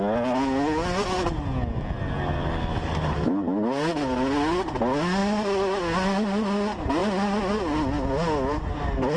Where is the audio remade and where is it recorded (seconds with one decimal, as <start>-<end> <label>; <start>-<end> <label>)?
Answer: 0.0-9.2 recorded